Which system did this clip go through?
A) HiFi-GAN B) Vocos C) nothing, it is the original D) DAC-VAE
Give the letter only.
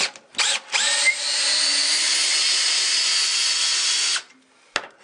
C